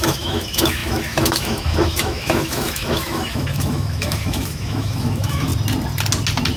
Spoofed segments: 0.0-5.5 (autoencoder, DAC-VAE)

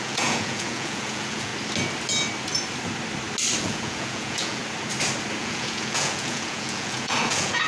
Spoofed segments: 0.0-1.5 (vocoder, Vocos); 3.6-4.6; 5.4-7.7

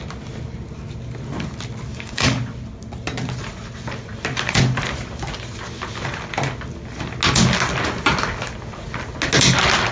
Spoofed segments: 1.9-2.4 (codec, DAC)

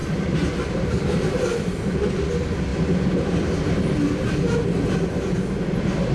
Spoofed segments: none

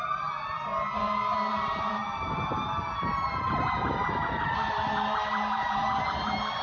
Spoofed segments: 0.0-0.7 (vocoder, BigVGAN v2); 1.5-6.6

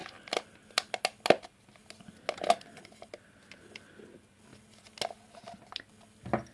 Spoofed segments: none

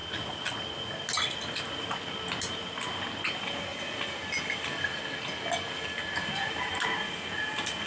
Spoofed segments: none